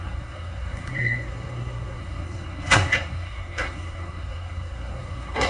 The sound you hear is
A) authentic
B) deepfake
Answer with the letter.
B